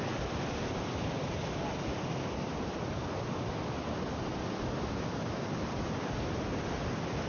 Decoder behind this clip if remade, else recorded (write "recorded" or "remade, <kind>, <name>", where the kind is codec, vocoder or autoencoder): recorded